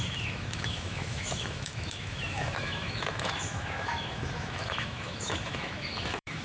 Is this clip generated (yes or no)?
yes